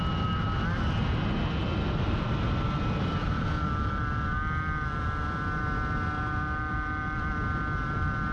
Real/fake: real